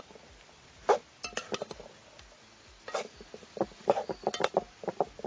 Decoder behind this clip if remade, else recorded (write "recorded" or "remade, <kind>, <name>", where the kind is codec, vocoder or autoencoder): recorded